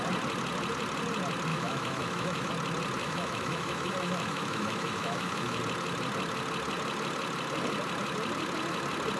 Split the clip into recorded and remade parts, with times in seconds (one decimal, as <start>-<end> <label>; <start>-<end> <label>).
0.0-1.5 recorded; 1.5-2.5 remade; 2.5-3.0 recorded; 3.0-5.6 remade; 5.6-9.2 recorded